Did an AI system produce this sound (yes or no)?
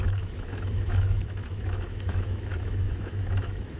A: yes